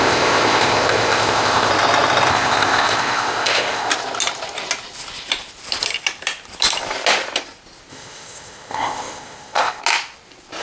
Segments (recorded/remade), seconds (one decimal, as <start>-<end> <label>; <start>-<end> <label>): 0.0-1.7 remade; 1.7-2.3 recorded; 2.3-3.9 remade; 3.9-7.9 recorded; 7.9-9.8 remade; 9.8-10.6 recorded